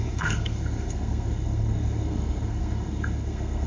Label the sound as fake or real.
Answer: fake